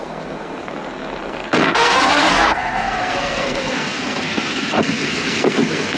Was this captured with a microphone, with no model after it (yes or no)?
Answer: no